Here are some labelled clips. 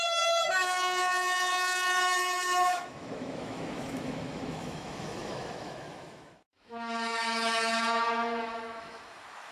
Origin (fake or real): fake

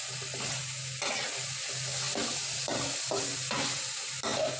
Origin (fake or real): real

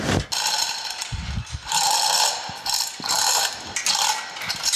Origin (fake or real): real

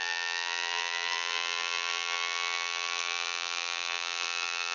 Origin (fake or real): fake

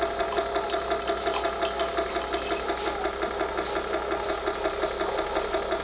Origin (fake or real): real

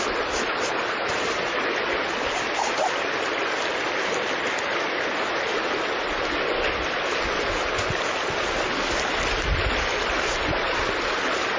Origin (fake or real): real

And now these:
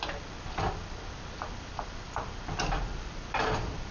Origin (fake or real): real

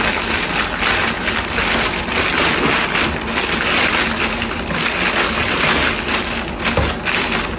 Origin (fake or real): real